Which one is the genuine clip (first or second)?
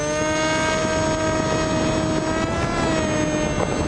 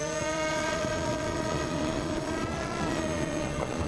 first